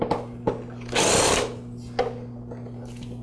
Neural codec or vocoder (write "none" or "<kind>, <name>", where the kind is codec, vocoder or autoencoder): none